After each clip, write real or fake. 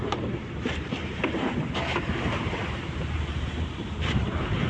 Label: fake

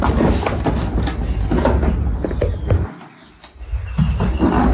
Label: real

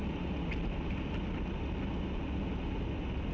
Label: real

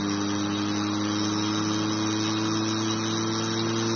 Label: real